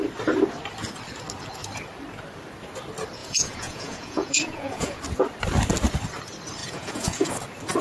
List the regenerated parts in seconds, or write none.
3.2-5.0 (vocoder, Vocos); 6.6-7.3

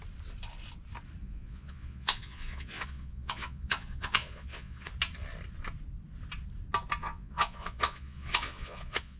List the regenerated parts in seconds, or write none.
1.2-4.9 (vocoder, Vocos); 7.0-9.2

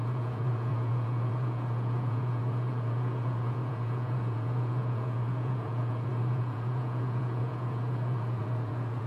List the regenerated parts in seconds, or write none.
0.0-9.1 (vocoder, Vocos)

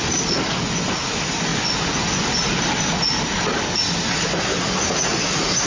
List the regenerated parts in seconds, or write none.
1.5-2.4 (vocoder, Vocos)

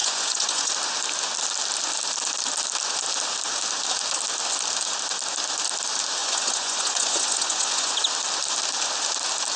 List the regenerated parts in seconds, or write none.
0.0-0.7 (vocoder, Vocos); 6.2-7.9